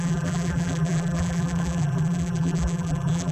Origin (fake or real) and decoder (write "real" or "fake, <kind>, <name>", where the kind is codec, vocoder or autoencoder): fake, vocoder, BigVGAN v2